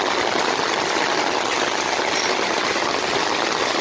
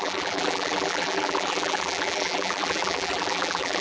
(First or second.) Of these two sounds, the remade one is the second